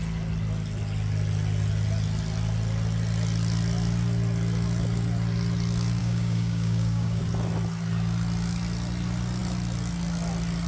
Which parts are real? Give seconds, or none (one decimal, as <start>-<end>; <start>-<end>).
0.0-6.0; 7.2-10.7